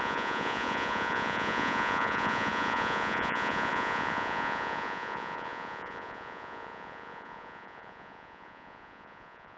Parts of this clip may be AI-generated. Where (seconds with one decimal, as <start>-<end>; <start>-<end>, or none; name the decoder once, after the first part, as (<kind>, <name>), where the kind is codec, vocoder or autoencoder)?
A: 0.0-9.6 (vocoder, Vocos)